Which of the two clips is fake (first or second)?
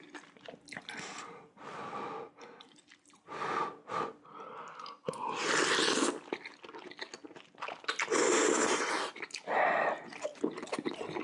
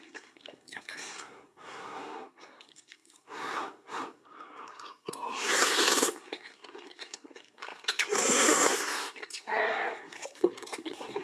second